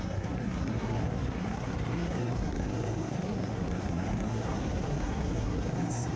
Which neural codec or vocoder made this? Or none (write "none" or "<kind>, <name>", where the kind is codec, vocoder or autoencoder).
codec, SNAC